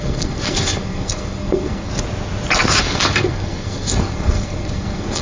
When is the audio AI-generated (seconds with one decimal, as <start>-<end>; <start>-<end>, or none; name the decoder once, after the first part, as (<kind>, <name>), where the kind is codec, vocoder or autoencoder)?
0.0-1.9 (codec, SNAC); 2.8-5.2